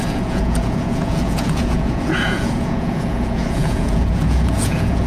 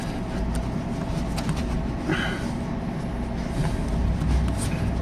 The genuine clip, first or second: second